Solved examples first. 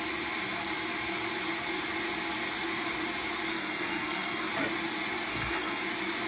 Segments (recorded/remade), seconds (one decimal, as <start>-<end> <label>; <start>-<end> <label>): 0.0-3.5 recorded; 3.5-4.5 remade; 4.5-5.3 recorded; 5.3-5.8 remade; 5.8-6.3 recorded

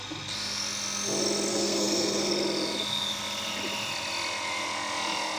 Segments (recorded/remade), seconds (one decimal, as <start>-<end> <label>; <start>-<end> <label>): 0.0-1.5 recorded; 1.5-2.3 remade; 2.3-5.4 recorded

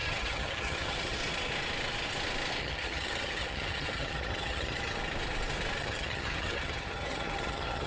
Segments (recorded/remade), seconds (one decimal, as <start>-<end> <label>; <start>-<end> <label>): 0.0-1.2 remade; 1.2-2.6 recorded; 2.6-5.0 remade; 5.0-5.8 recorded; 5.8-7.9 remade

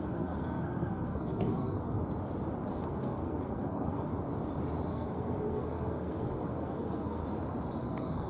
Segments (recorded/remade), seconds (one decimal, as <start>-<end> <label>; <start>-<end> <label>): 0.0-2.0 remade; 2.0-2.7 recorded; 2.7-4.1 remade; 4.1-4.9 recorded; 4.9-7.2 remade; 7.2-7.8 recorded; 7.8-8.3 remade

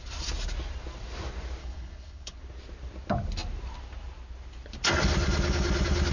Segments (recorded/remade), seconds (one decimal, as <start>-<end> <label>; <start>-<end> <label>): 0.0-1.6 recorded; 1.6-2.4 remade; 2.4-6.1 recorded

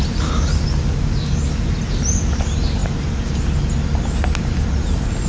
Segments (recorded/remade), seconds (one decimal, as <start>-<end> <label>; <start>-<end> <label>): 0.0-5.3 recorded

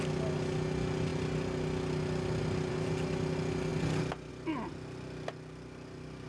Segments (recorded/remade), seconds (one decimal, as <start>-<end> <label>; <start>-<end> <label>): 0.0-6.3 recorded

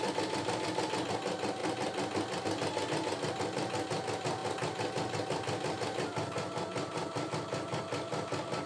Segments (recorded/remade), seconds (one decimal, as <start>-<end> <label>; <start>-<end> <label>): 0.0-8.7 recorded